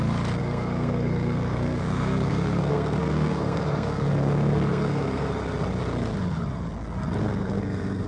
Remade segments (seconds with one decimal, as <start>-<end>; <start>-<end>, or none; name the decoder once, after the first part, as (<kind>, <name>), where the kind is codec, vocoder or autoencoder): 0.4-5.3 (codec, SNAC); 7.2-8.1